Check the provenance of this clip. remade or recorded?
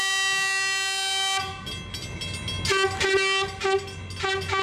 recorded